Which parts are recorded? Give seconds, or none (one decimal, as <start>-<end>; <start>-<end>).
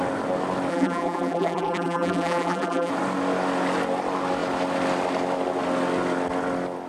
0.0-0.7; 2.9-6.9